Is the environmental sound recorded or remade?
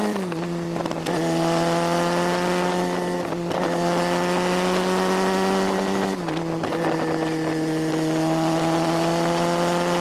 recorded